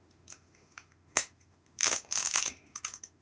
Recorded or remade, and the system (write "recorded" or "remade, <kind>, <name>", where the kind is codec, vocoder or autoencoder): remade, autoencoder, DAC-VAE